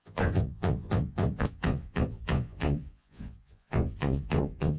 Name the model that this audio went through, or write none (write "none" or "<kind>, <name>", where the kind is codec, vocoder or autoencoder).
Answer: vocoder, Vocos